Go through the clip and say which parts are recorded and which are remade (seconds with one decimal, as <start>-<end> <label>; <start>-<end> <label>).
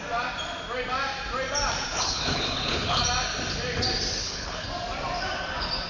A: 0.0-1.9 recorded; 1.9-3.0 remade; 3.0-4.2 recorded; 4.2-4.7 remade; 4.7-5.9 recorded